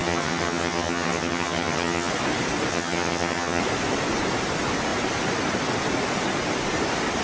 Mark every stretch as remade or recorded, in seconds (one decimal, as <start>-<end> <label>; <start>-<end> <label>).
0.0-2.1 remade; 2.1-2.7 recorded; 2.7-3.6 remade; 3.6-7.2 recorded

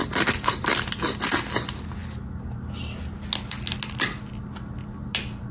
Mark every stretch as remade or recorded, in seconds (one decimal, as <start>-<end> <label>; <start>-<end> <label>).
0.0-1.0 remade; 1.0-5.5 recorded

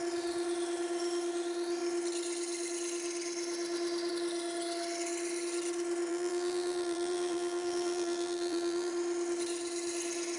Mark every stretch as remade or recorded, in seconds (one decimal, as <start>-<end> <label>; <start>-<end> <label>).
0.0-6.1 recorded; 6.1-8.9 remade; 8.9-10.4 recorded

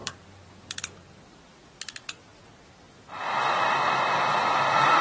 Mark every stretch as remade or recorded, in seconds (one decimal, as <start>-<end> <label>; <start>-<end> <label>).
0.0-1.5 remade; 1.5-2.3 recorded; 2.3-4.0 remade; 4.0-5.0 recorded

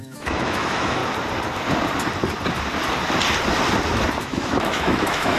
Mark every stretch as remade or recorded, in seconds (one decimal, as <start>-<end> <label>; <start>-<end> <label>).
0.0-1.0 remade; 1.0-4.2 recorded; 4.2-5.4 remade